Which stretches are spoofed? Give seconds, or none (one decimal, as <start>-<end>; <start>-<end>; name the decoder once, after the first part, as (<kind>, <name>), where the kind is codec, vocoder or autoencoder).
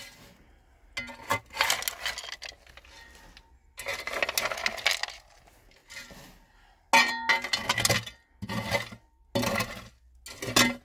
none